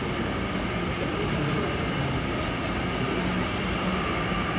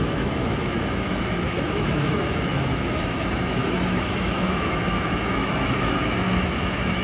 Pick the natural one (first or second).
first